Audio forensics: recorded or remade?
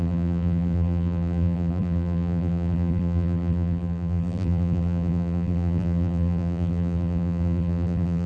remade